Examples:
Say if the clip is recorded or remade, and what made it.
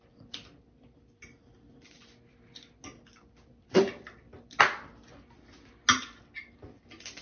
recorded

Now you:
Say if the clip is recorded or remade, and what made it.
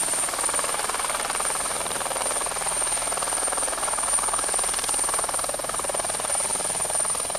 remade, vocoder, BigVGAN v2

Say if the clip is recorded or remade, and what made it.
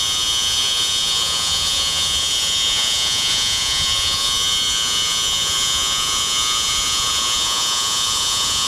remade, vocoder, Vocos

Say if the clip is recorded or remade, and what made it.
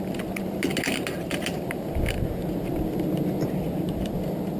recorded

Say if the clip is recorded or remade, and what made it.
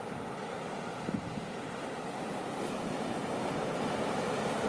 recorded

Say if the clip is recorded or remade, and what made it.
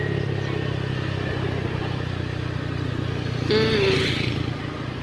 recorded